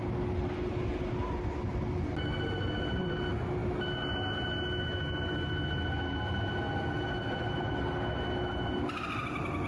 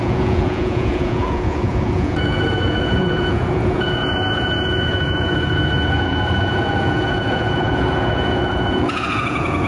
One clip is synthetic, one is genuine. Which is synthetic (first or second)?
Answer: second